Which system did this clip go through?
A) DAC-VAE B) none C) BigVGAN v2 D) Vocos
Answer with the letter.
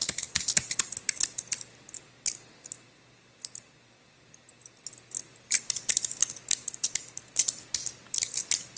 B